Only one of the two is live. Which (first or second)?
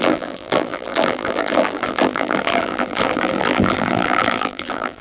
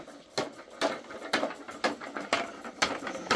second